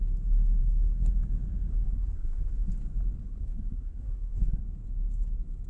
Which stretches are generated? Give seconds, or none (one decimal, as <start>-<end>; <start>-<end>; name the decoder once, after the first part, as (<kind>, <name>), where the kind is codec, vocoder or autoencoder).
0.6-1.1 (codec, SNAC); 1.7-2.7; 3.2-4.6